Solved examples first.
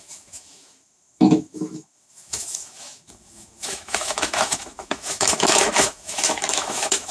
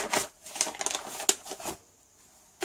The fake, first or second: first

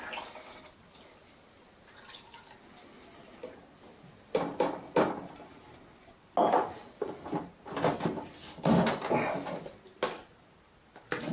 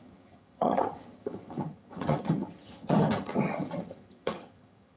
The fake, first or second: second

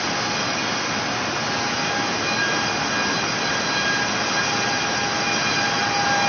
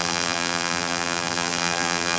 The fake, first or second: second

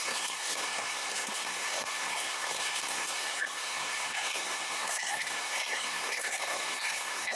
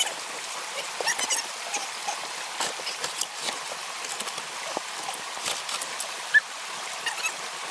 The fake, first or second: first